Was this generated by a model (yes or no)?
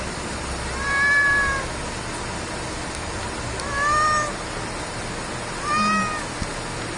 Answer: no